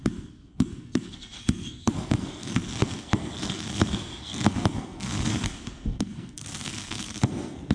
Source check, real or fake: fake